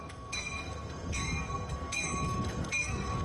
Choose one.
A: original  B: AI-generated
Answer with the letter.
B